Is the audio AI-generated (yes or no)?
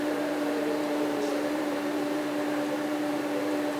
yes